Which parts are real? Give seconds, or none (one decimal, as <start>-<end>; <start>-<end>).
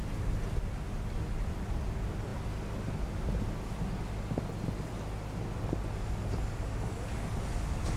0.0-8.0